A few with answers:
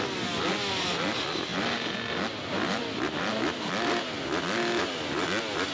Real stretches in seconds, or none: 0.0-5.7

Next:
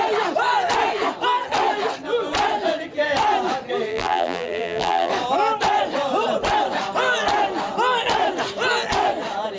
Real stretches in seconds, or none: 0.0-3.9; 5.1-9.6

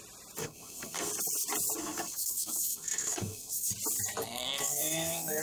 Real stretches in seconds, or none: 0.0-0.4; 1.1-1.8; 3.7-4.2

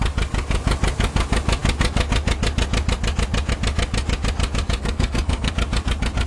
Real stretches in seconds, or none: 0.0-4.8; 5.5-6.3

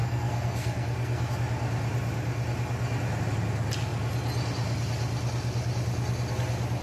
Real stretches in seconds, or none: 1.3-6.8